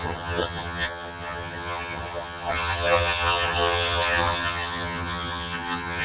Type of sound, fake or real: fake